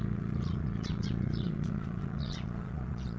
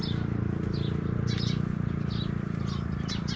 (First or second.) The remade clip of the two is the first